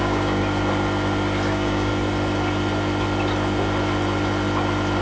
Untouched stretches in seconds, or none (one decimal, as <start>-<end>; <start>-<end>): 0.4-1.5; 1.9-5.0

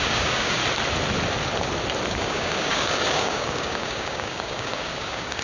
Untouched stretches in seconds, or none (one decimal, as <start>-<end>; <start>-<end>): 0.6-2.1